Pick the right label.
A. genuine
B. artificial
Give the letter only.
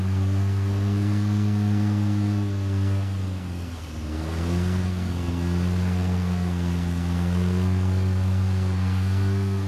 B